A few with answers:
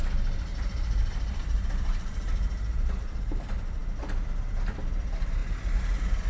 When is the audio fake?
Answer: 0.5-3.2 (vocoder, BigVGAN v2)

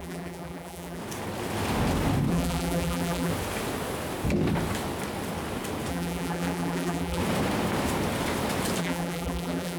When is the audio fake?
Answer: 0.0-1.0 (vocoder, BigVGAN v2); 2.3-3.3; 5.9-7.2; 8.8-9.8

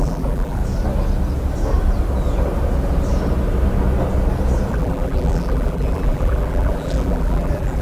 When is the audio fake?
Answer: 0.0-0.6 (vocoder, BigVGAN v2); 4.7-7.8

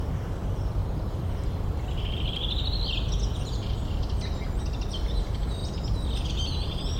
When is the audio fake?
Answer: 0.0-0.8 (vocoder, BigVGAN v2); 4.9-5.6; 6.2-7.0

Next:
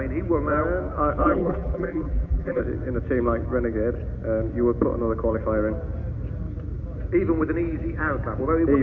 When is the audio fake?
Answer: 1.2-2.6 (vocoder, BigVGAN v2)